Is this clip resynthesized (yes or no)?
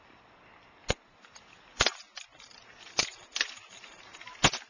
no